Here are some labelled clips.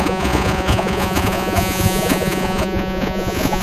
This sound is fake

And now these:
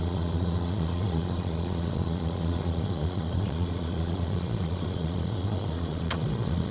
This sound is fake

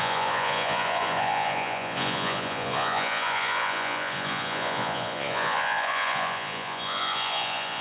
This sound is fake